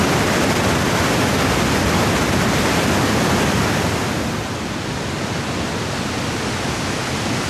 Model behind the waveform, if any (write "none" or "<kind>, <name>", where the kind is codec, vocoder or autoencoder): none